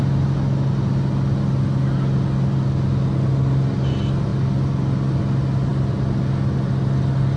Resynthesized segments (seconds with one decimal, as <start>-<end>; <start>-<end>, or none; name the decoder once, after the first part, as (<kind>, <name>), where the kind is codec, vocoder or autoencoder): none

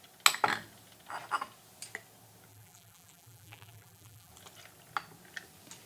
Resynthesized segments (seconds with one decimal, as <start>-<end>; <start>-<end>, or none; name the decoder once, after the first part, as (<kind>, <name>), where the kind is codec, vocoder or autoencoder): 2.5-4.3 (vocoder, BigVGAN v2)

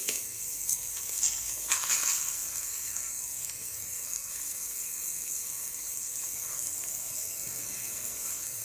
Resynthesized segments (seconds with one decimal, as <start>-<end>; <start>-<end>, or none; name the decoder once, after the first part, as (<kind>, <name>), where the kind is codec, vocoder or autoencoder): 0.0-8.6 (codec, SNAC)

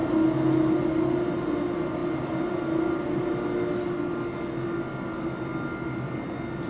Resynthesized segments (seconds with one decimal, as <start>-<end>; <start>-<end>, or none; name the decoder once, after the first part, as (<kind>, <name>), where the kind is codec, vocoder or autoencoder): none

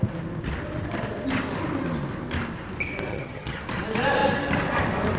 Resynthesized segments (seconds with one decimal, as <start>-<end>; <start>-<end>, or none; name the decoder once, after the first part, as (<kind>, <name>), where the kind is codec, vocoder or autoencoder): 3.1-3.6 (vocoder, HiFi-GAN)

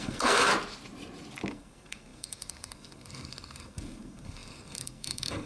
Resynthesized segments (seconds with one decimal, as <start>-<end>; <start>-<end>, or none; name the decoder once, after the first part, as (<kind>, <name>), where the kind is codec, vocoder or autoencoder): 0.0-0.5 (codec, SNAC); 1.5-5.5

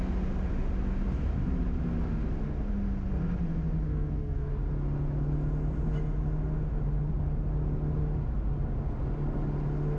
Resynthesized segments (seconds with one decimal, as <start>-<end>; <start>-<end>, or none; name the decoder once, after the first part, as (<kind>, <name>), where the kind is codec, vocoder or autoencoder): 3.9-4.5 (codec, SNAC)

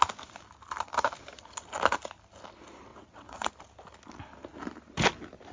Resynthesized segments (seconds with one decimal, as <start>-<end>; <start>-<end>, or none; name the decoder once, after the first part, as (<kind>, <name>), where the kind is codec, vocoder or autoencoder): 2.9-3.5 (vocoder, WaveNeXt)